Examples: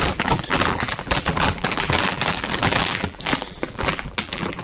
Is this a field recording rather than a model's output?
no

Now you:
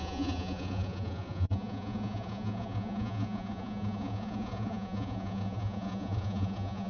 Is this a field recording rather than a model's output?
no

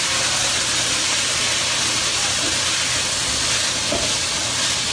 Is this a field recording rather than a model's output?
yes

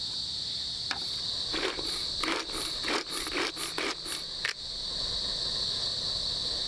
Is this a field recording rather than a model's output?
yes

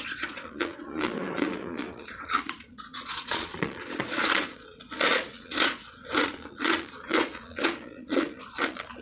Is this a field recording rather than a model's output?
no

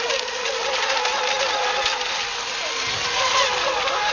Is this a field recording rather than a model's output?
yes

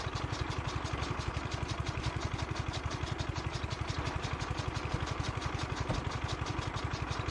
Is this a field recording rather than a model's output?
yes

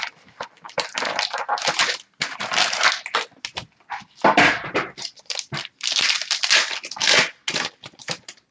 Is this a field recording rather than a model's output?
yes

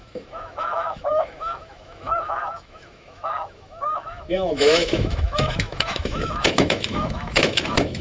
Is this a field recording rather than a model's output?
no